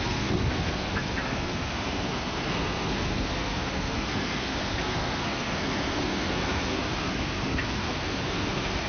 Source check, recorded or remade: remade